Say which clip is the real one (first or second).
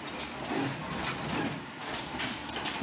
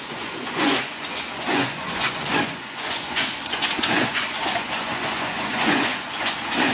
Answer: first